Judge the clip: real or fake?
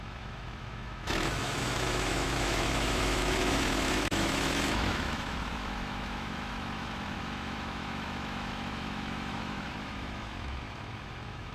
fake